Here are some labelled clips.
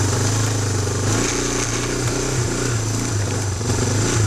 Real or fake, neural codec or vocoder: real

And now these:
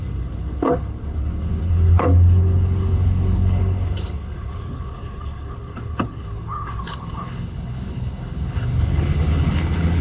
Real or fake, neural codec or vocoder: fake, codec, HILCodec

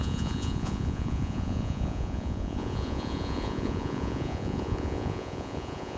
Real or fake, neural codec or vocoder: fake, vocoder, Vocos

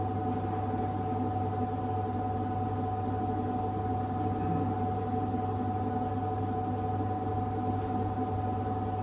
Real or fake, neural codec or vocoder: real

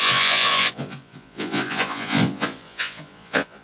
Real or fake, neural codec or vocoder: fake, vocoder, Vocos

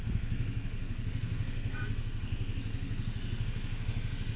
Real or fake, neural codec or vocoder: fake, codec, SNAC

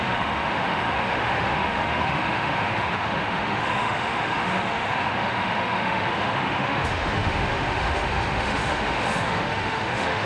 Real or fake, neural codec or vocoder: fake, autoencoder, DAC-VAE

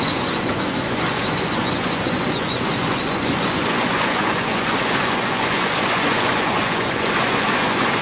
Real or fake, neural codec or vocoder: fake, vocoder, Vocos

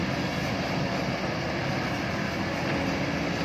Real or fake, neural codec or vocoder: real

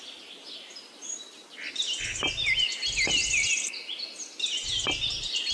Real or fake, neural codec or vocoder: real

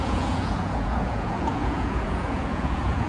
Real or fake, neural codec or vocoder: fake, vocoder, Vocos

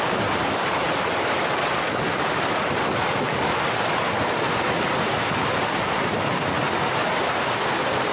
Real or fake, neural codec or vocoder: real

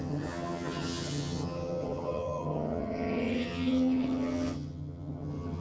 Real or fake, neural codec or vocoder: fake, vocoder, HiFi-GAN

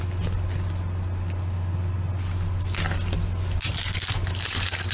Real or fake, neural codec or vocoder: real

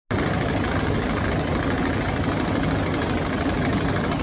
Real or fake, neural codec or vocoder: real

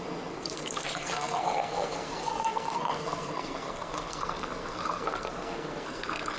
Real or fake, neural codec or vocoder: fake, codec, SNAC